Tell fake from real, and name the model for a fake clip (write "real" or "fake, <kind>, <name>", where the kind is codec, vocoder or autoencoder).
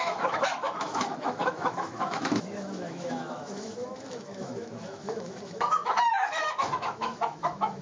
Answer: fake, autoencoder, DAC-VAE